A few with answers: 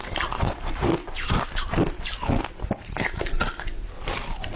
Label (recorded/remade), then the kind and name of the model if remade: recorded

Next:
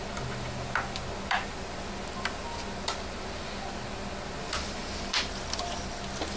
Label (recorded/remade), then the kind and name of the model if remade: recorded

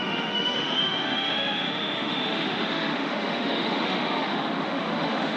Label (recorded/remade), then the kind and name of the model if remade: remade, autoencoder, DAC-VAE